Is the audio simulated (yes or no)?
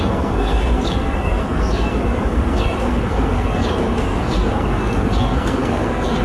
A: yes